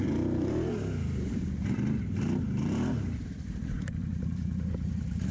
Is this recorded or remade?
remade